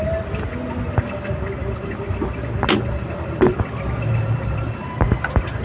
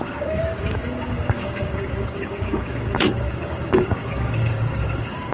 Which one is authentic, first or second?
first